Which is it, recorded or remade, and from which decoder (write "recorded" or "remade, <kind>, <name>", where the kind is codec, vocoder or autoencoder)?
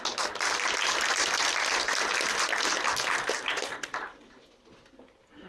recorded